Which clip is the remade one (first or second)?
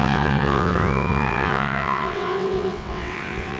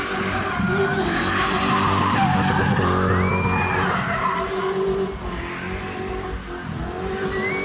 first